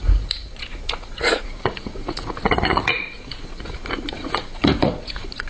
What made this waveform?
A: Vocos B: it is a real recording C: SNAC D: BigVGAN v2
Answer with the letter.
A